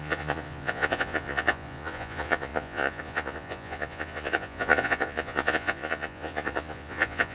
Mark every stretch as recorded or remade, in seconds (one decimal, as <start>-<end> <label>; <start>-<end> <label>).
0.0-7.3 remade